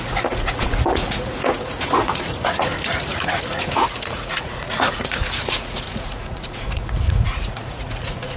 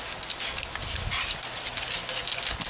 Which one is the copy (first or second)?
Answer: first